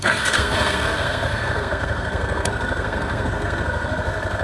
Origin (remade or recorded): remade